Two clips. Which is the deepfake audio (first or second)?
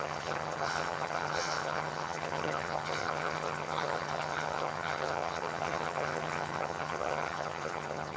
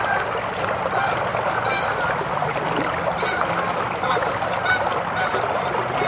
first